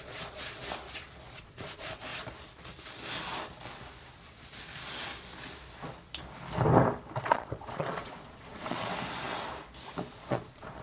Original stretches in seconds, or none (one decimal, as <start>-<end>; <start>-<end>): 0.6-1.3; 2.1-7.2; 8.9-10.1